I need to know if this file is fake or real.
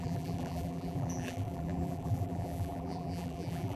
fake